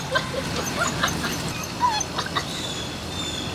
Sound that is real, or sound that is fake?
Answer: real